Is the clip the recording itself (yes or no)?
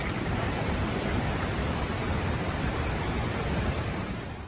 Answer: no